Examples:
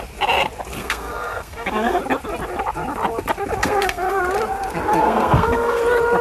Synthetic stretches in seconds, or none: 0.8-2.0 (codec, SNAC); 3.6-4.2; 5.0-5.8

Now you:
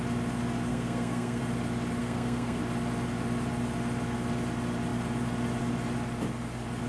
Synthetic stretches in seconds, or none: 0.7-1.4 (codec, SNAC); 2.0-2.6

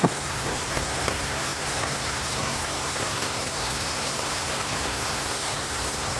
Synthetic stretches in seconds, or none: 0.0-6.2 (codec, SNAC)

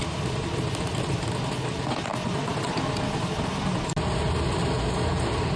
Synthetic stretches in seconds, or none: none